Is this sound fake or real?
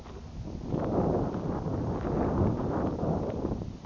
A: real